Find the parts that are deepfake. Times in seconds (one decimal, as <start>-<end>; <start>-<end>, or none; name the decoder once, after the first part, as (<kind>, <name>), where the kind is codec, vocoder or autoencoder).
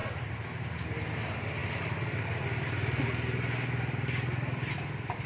none